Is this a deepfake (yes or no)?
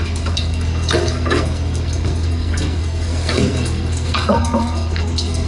yes